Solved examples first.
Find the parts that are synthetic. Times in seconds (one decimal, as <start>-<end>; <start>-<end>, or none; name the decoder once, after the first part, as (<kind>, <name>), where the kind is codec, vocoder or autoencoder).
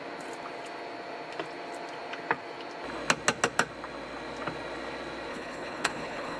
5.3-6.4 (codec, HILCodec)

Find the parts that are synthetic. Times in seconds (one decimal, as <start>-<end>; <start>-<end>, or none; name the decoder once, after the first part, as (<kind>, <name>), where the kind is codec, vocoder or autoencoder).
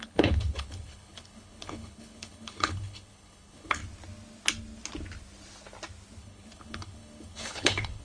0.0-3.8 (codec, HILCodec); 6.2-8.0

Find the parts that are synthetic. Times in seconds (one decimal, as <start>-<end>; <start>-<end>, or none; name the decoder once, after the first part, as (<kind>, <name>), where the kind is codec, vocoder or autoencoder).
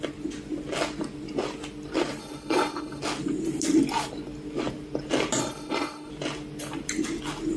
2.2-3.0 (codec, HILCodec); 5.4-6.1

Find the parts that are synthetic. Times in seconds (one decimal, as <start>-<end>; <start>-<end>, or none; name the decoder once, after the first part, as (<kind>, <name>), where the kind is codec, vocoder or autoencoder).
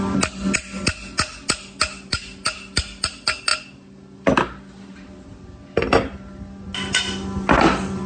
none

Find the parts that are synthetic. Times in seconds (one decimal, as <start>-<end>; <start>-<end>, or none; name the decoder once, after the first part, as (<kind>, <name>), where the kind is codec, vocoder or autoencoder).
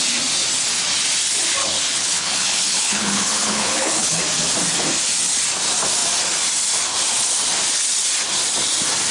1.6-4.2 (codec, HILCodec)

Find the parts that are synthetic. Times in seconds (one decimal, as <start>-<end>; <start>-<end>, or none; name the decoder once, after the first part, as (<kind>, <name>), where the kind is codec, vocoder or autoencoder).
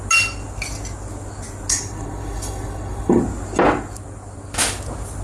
1.7-3.2 (codec, HILCodec)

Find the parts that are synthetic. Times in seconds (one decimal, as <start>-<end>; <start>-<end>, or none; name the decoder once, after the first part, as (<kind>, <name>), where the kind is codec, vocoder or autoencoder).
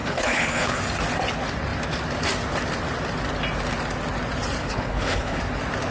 0.0-0.8 (codec, HILCodec); 4.6-5.4